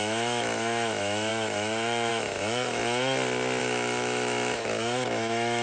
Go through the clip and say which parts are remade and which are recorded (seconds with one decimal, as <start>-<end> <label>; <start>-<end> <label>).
0.0-2.8 remade; 2.8-3.6 recorded; 3.6-5.6 remade